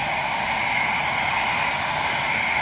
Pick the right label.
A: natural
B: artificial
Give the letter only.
A